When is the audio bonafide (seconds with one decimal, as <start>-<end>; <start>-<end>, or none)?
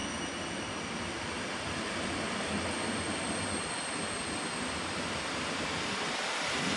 0.0-6.8